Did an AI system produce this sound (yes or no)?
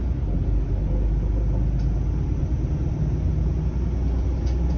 no